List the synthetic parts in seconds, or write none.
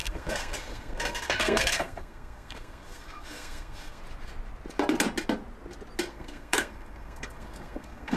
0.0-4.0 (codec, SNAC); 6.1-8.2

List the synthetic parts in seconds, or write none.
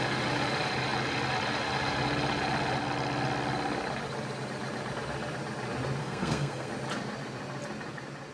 6.0-6.7 (codec, SNAC)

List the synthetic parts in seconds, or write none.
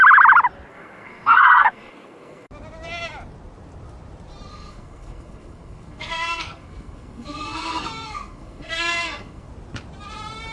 0.7-2.5 (codec, SNAC); 4.5-9.5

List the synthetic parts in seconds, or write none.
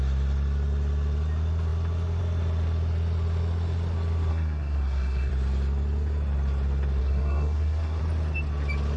4.3-5.3 (codec, SNAC); 7.0-8.0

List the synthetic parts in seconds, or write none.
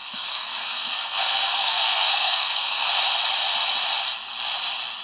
0.0-3.0 (codec, SNAC)